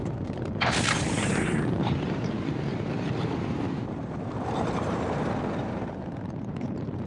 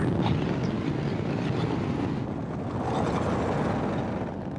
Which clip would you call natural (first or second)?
second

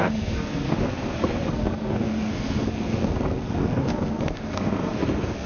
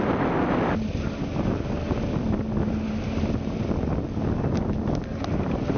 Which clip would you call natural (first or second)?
second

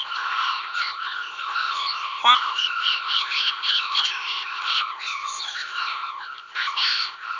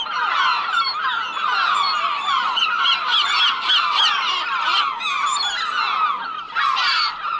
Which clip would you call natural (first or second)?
second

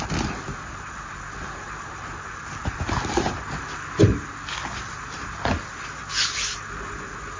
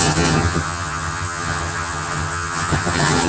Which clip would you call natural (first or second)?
first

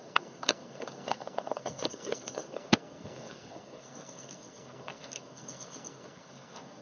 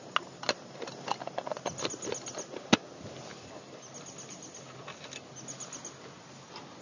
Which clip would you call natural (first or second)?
second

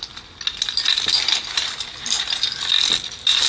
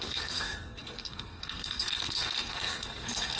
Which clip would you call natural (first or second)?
first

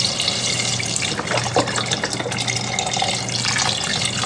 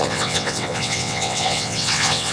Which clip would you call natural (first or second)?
first